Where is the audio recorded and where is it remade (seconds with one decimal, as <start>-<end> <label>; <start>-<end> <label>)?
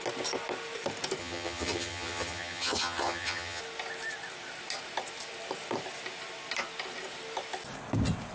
0.0-1.2 recorded; 1.2-3.6 remade; 3.6-8.3 recorded